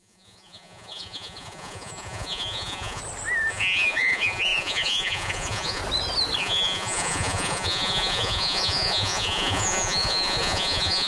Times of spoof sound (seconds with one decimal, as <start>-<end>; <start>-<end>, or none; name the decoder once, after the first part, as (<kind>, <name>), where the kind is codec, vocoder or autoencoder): 0.0-3.0 (vocoder, Vocos); 3.5-5.8; 6.4-11.1